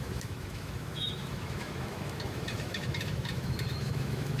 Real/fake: fake